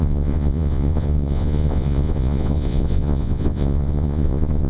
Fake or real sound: fake